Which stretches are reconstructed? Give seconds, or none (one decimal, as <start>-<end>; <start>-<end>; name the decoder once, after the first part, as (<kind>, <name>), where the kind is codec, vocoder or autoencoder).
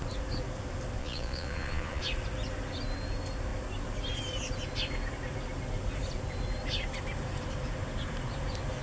1.0-2.0 (vocoder, Vocos)